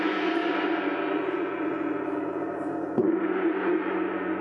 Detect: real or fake fake